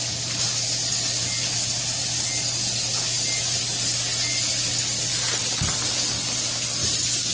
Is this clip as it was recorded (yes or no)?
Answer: yes